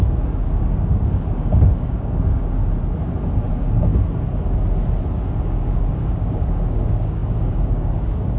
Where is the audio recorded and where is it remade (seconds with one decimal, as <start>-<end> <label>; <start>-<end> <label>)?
0.0-2.6 remade; 2.6-3.5 recorded; 3.5-3.9 remade; 3.9-5.4 recorded; 5.4-8.4 remade